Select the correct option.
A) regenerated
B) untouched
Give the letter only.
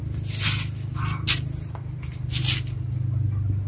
B